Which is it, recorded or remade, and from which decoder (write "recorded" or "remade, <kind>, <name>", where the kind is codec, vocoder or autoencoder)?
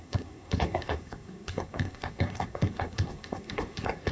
remade, codec, SNAC